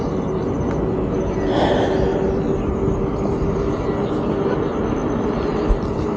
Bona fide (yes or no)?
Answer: yes